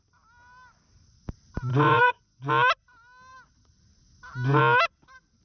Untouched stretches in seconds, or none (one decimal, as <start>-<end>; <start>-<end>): 0.0-1.7; 2.5-5.4